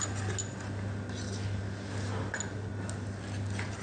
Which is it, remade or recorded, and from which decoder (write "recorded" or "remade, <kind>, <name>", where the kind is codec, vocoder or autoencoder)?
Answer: recorded